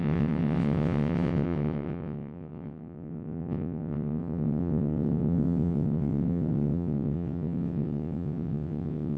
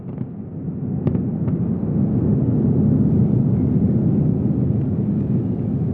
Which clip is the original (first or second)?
second